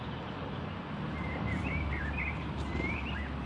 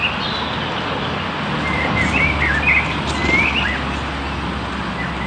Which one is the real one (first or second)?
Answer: second